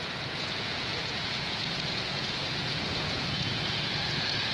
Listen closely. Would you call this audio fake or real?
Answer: fake